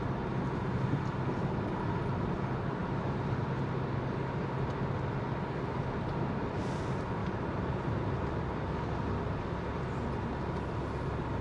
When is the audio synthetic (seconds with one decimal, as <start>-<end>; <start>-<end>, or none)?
2.8-3.5; 7.2-8.4